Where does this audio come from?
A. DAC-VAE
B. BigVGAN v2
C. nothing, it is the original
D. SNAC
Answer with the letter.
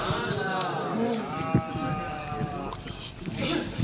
C